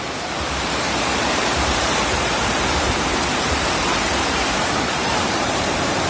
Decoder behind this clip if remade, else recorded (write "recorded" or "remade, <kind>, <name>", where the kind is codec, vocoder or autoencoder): remade, vocoder, BigVGAN v2